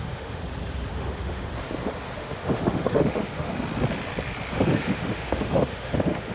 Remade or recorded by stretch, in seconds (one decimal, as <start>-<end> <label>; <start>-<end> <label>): 0.0-0.4 remade; 0.4-0.9 recorded; 0.9-1.5 remade; 1.5-2.2 recorded; 2.2-3.5 remade; 3.5-4.5 recorded; 4.5-6.3 remade